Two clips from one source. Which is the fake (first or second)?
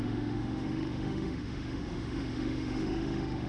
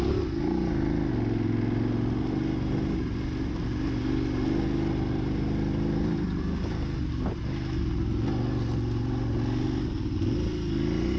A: first